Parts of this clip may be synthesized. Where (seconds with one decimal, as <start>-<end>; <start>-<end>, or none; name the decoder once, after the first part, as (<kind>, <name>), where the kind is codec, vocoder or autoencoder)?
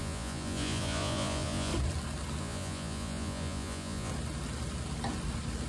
0.0-1.7 (vocoder, Vocos); 2.4-4.1